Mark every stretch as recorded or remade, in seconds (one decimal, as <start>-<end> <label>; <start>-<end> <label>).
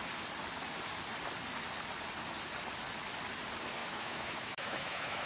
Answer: 0.0-3.8 recorded; 3.8-5.3 remade